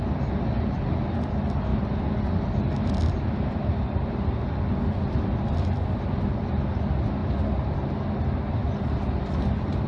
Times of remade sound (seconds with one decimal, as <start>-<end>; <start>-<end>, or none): none